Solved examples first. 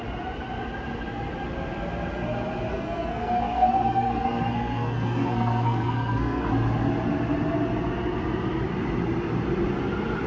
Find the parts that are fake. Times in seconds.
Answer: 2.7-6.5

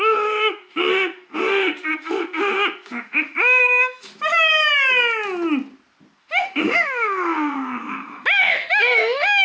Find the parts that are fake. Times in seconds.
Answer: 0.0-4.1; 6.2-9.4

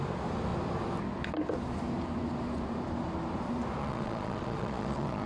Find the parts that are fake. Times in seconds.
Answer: 3.8-5.3